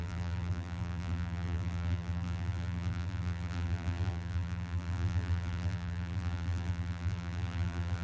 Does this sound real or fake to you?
fake